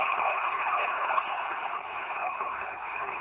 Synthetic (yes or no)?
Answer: yes